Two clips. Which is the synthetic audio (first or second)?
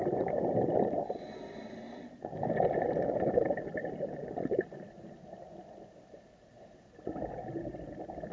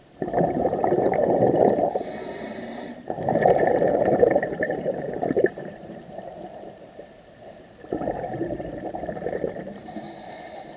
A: second